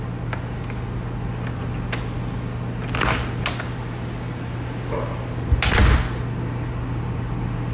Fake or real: real